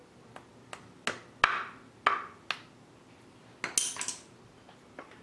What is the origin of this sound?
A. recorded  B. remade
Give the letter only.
A